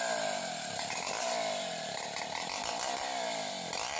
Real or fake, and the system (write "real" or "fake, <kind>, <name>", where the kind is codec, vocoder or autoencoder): fake, vocoder, BigVGAN v2